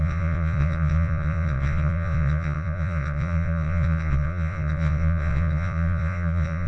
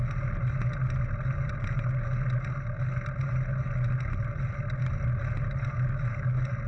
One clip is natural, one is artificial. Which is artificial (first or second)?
first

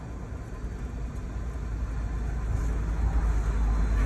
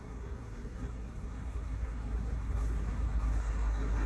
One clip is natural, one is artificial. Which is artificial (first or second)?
second